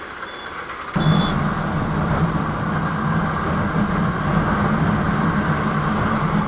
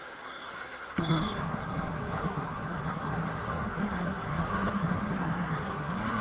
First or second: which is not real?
second